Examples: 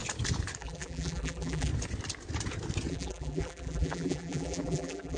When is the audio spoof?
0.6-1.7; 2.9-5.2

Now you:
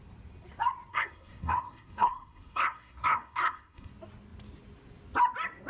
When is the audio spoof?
0.9-3.9

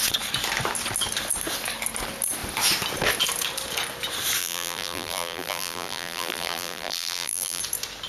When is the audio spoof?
4.4-7.6

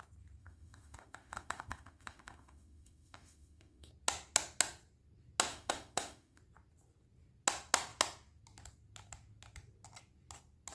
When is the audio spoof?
0.4-3.9; 5.5-6.4

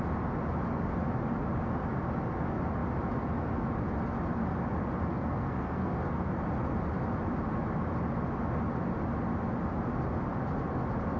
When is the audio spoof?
5.1-6.3

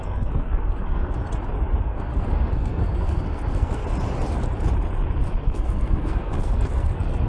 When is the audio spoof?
0.0-1.2; 1.8-3.8; 5.4-7.3

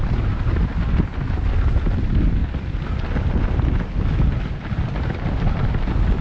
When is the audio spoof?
none

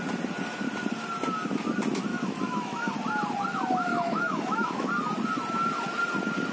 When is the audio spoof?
2.1-2.9; 3.9-4.9